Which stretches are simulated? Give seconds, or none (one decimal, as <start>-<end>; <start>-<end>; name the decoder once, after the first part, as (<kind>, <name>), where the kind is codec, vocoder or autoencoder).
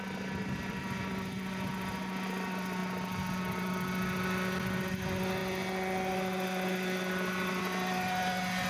none